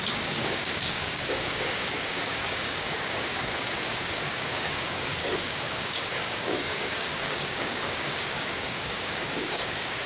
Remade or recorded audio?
remade